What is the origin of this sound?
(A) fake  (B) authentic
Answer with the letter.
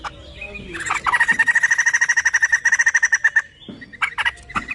B